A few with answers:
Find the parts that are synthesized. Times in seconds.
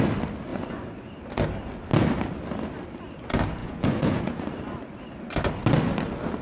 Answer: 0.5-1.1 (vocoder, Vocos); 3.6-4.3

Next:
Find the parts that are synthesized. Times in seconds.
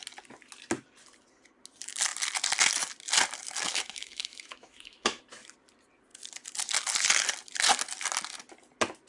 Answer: 3.7-5.2 (autoencoder, DAC-VAE)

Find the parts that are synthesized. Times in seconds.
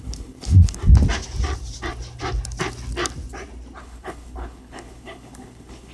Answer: 0.0-0.8 (codec, HILCodec); 3.8-5.9